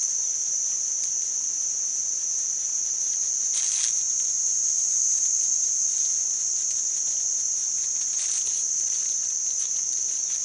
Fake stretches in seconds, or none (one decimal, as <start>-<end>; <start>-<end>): 0.0-1.9; 3.0-5.0; 8.4-10.4